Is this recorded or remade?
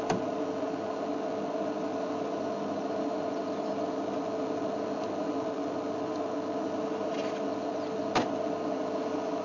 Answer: recorded